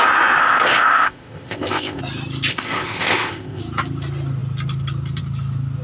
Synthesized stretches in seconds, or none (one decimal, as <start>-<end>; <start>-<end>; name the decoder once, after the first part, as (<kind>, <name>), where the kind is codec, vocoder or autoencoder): 0.4-2.0 (codec, ZipCodec); 2.5-3.6